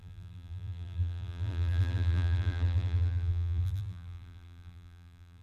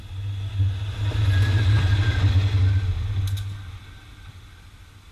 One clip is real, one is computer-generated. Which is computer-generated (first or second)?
first